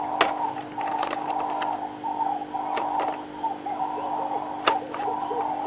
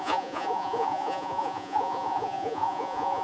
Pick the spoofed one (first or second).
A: second